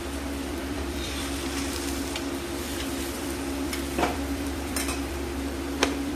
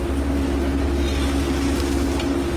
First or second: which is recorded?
second